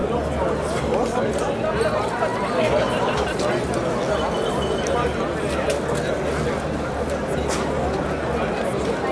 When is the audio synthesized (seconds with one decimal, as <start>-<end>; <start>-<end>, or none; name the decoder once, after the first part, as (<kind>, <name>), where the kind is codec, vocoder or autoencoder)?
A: none